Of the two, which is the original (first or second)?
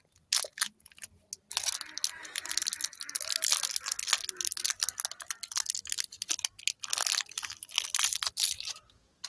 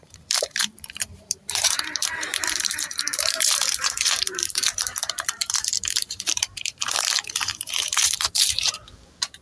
first